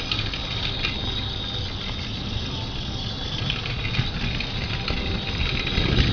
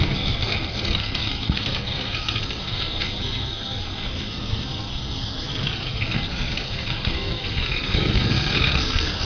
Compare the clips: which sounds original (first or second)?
first